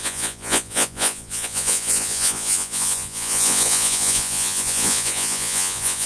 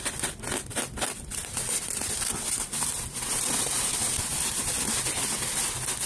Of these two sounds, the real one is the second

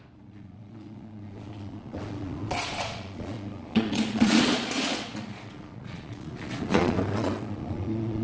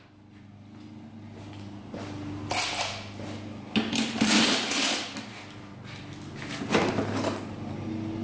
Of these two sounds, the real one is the second